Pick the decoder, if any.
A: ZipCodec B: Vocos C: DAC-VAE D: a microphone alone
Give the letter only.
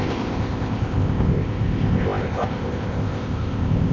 A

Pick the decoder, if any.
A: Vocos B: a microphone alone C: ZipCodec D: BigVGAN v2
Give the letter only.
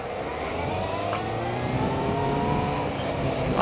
B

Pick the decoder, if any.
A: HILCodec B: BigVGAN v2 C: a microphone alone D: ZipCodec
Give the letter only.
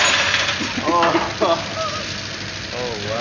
C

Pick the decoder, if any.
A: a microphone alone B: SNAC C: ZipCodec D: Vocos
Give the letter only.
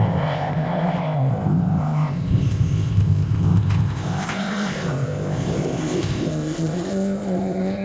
C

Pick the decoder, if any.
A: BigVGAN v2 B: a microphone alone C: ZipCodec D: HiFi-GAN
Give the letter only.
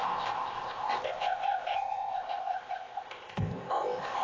C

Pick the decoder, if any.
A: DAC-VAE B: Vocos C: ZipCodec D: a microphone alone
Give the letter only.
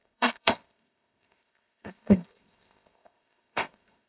C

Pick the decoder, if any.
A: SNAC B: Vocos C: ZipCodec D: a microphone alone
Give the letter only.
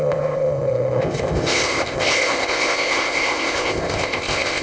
C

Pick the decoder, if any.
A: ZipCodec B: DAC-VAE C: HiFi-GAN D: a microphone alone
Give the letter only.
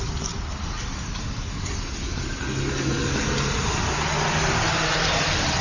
D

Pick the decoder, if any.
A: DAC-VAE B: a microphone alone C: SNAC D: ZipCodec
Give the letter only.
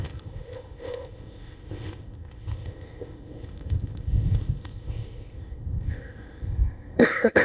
D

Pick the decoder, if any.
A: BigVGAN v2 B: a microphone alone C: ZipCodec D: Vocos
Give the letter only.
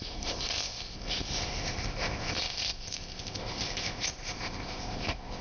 C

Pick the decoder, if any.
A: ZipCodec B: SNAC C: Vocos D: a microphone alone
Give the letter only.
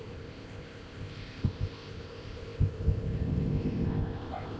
A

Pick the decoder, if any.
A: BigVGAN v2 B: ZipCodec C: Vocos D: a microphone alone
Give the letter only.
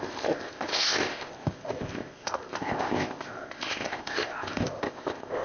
B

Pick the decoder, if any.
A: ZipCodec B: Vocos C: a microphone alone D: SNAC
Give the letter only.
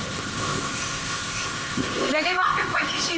A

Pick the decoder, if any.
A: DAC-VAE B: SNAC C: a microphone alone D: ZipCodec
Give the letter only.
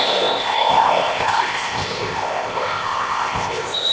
D